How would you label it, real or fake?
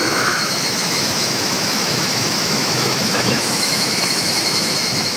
fake